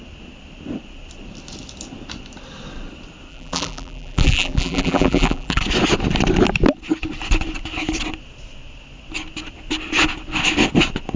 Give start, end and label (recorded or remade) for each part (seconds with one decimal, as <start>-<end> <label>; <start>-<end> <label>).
0.0-3.3 recorded; 3.3-5.6 remade; 5.6-11.2 recorded